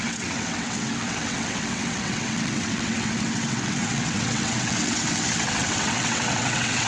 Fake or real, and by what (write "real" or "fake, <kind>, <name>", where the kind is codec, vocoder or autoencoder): fake, vocoder, WaveNeXt